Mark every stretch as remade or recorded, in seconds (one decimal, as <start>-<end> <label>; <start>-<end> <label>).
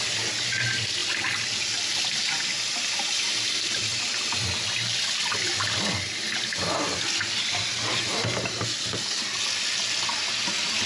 0.0-10.9 recorded